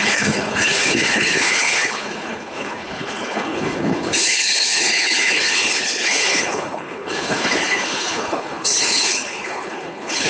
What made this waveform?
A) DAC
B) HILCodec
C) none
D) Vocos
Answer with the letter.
B